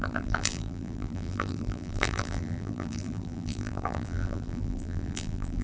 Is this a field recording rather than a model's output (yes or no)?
no